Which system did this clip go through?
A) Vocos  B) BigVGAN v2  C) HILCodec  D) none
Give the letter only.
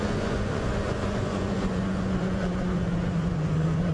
A